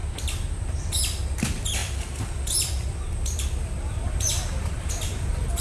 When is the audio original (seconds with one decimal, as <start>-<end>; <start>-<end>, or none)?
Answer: 0.0-0.8